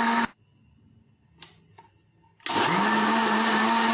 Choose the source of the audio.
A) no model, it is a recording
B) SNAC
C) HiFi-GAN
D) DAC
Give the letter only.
A